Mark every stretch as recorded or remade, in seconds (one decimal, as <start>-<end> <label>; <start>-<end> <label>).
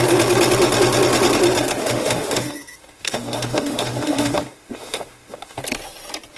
0.0-1.8 recorded; 1.8-5.6 remade; 5.6-6.4 recorded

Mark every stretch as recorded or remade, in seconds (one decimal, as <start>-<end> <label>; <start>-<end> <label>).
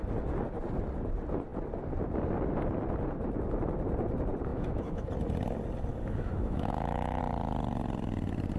0.0-4.5 recorded; 4.5-5.1 remade; 5.1-5.9 recorded; 5.9-7.2 remade; 7.2-8.6 recorded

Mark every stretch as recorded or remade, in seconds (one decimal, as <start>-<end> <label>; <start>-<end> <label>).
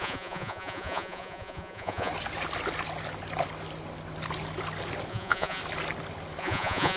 0.0-2.1 remade; 2.1-5.1 recorded; 5.1-5.6 remade; 5.6-6.4 recorded; 6.4-7.0 remade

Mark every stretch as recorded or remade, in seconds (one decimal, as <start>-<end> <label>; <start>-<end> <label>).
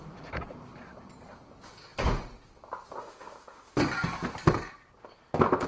0.0-3.0 recorded; 3.0-3.8 remade; 3.8-5.7 recorded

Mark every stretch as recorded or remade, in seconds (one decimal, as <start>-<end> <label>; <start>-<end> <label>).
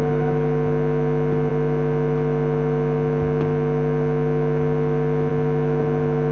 0.0-6.3 recorded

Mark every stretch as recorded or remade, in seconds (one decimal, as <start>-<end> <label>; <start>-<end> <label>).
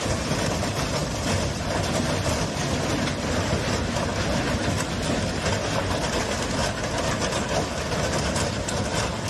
0.0-1.0 remade; 1.0-6.0 recorded; 6.0-6.6 remade; 6.6-7.9 recorded; 7.9-9.3 remade